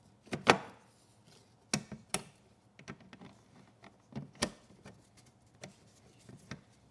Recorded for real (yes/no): yes